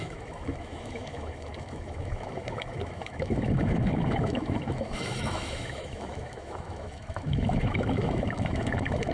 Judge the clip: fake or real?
fake